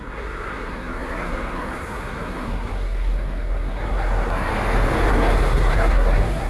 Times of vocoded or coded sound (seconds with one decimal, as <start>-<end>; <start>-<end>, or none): 0.0-4.5; 5.1-6.5